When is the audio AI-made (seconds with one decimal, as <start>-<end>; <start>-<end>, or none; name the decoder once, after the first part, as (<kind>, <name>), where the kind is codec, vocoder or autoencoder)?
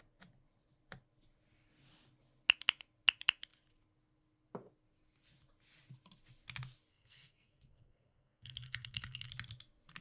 6.9-9.3 (codec, SNAC)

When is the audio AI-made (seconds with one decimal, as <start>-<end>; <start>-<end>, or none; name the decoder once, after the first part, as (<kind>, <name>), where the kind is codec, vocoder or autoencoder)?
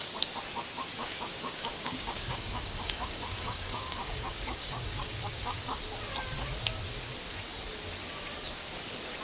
0.9-5.8 (codec, DAC)